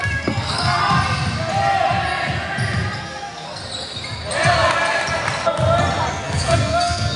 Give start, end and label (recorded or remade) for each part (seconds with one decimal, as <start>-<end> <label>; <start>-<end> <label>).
0.0-0.8 remade; 0.8-3.0 recorded; 3.0-3.6 remade; 3.6-6.1 recorded; 6.1-7.2 remade